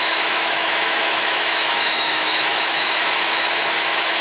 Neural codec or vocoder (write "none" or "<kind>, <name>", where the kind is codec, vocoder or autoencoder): autoencoder, DAC-VAE